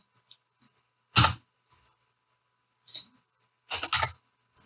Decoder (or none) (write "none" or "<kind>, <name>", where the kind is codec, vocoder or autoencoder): none